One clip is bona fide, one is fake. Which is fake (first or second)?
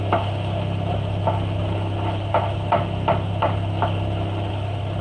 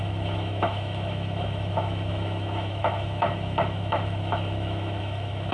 second